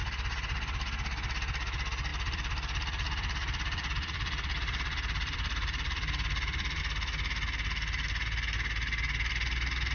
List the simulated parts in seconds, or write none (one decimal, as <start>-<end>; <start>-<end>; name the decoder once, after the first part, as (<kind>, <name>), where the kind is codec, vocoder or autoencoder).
2.1-6.8 (vocoder, BigVGAN v2)